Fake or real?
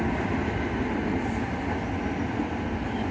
real